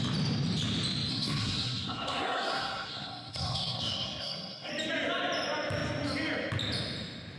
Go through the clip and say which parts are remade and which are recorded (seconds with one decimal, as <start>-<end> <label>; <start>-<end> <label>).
0.0-1.1 recorded; 1.1-4.7 remade; 4.7-7.4 recorded